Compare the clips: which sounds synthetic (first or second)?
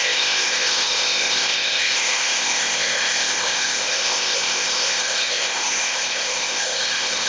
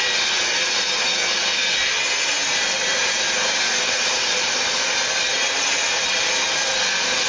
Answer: first